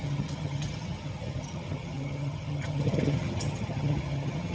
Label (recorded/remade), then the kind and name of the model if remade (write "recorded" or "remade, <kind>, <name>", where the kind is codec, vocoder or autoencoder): remade, vocoder, HiFi-GAN